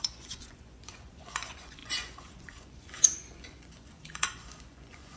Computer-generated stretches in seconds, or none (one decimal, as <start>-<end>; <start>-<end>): 0.0-5.2